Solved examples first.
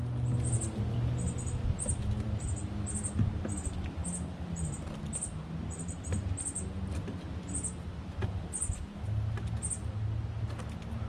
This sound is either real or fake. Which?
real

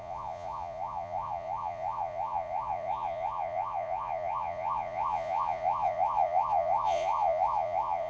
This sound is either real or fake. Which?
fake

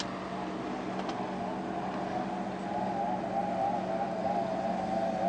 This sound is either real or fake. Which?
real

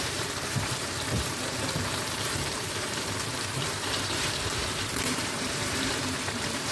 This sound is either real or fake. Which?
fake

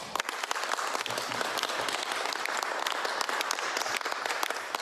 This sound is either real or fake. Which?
real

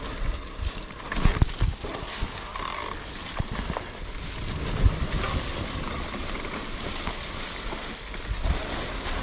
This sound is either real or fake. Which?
real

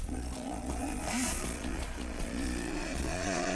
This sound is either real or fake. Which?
fake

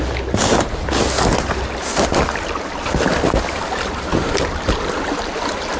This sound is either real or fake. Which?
real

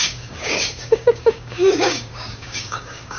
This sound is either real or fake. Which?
fake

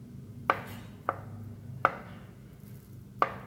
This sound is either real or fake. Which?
real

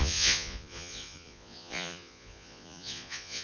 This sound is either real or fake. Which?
fake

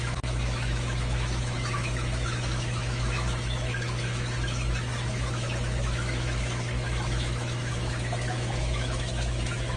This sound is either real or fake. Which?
fake